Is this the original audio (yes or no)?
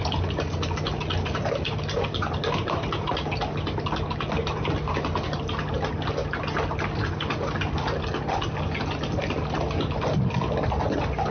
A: yes